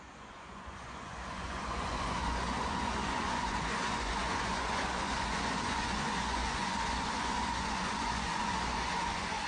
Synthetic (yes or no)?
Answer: yes